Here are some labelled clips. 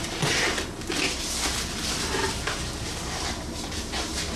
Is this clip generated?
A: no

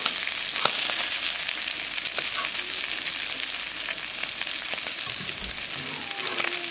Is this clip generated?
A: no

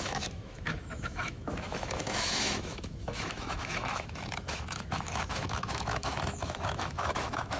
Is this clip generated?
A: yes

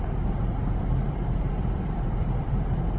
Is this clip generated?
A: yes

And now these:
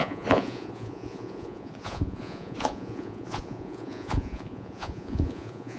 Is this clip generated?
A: yes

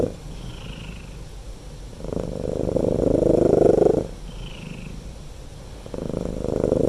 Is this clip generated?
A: no